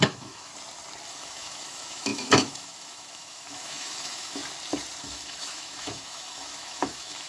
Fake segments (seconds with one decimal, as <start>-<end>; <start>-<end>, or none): 0.0-0.5; 1.1-4.4; 5.0-7.3